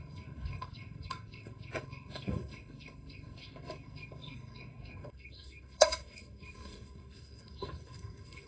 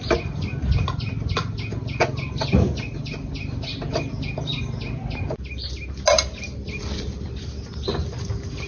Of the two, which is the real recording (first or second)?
second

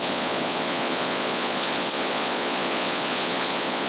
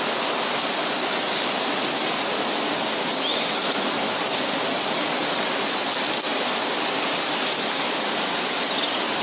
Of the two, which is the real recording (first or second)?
second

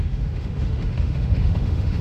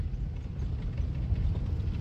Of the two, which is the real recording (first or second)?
second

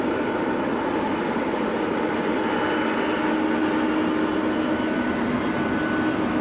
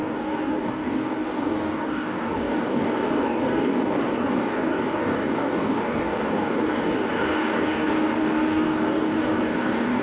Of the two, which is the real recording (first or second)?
first